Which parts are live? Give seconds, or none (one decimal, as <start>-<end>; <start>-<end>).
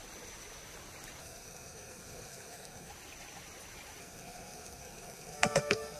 0.0-1.2; 2.9-4.0